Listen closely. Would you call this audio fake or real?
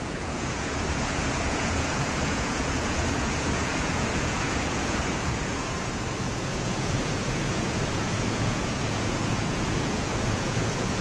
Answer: fake